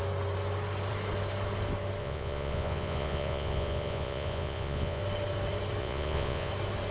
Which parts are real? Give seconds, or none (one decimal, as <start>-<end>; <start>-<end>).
0.0-2.0; 5.0-5.8; 6.5-6.9